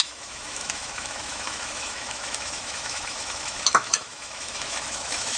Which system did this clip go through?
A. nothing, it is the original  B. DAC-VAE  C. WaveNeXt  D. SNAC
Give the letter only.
B